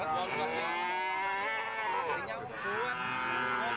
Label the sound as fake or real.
real